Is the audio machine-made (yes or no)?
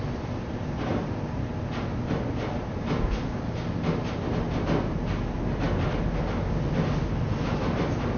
no